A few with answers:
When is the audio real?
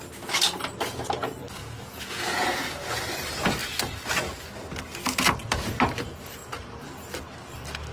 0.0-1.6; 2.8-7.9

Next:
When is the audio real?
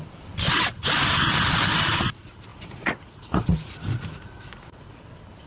0.0-2.5; 4.9-5.5